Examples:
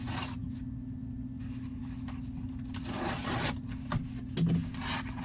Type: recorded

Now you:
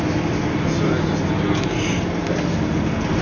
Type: recorded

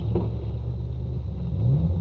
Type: recorded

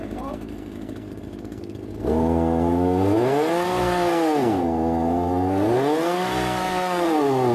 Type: remade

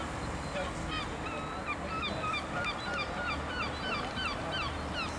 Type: recorded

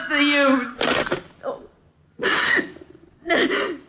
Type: recorded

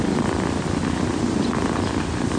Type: recorded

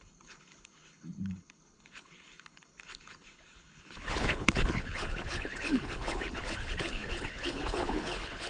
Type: remade